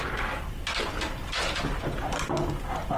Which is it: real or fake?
real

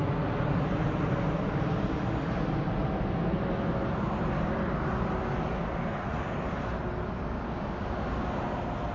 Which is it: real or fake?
real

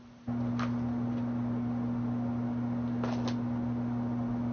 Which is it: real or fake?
real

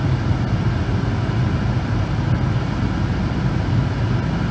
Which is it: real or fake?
real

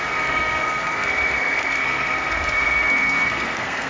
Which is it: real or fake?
fake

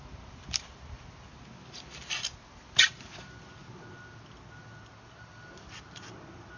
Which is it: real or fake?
real